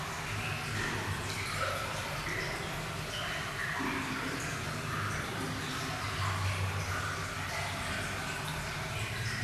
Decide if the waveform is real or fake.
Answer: real